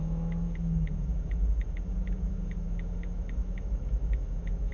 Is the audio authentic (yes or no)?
no